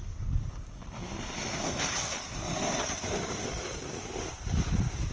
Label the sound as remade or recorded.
recorded